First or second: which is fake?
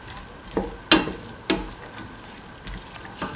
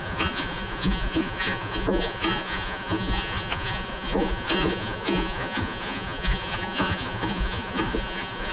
second